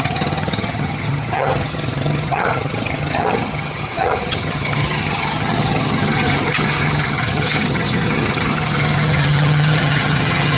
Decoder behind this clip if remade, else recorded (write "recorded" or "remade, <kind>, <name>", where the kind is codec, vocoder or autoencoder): remade, vocoder, HiFi-GAN